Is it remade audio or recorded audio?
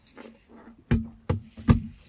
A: recorded